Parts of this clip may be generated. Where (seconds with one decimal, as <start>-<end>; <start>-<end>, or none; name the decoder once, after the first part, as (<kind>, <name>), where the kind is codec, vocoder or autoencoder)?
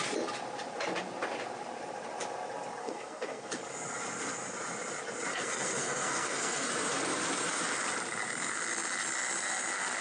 2.8-3.6 (codec, SNAC); 5.3-6.7